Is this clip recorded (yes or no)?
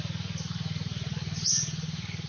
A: yes